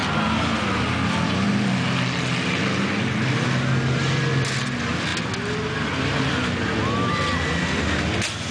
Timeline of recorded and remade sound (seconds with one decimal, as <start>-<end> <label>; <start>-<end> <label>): 0.0-8.5 recorded